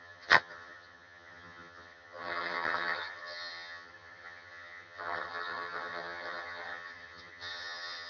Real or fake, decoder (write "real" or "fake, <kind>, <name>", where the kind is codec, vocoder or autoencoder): fake, vocoder, HiFi-GAN